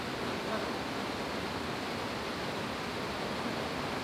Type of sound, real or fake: real